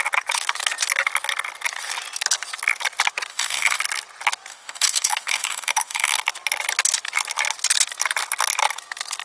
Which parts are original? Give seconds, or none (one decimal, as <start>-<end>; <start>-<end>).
0.0-3.3; 3.8-4.5; 6.2-9.2